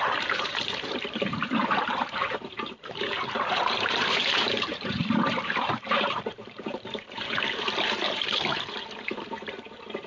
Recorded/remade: remade